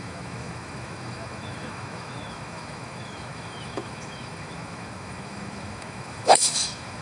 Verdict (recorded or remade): remade